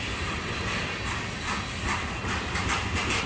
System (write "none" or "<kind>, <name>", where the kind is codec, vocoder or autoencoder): none